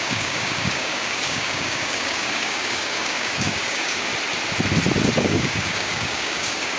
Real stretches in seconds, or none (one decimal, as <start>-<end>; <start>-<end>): 4.1-5.2